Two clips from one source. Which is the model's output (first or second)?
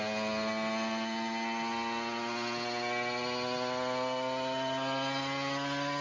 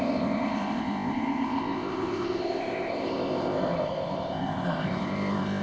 second